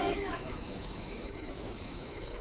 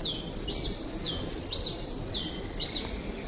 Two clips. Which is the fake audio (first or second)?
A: first